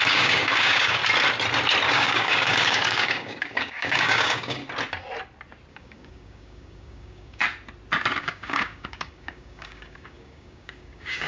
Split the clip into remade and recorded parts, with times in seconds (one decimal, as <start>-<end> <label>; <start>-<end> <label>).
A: 0.0-1.0 remade; 1.0-1.9 recorded; 1.9-4.6 remade; 4.6-5.7 recorded; 5.7-7.4 remade; 7.4-8.2 recorded; 8.2-11.3 remade